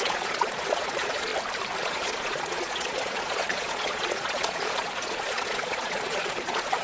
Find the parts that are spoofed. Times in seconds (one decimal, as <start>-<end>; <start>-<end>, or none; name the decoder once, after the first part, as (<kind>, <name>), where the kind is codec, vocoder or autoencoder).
0.0-1.3 (vocoder, Vocos); 1.8-6.8